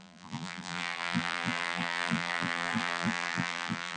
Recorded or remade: remade